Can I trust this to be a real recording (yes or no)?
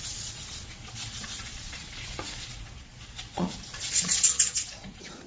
no